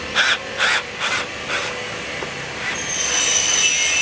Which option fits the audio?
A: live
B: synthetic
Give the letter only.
A